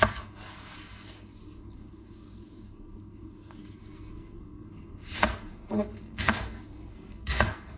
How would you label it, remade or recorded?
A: remade